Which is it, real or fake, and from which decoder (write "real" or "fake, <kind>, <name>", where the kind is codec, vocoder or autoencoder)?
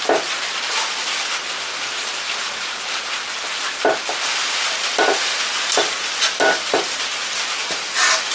real